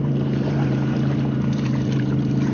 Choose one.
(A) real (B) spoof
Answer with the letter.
B